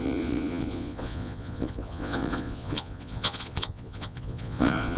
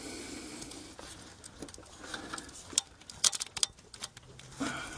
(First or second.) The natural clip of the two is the second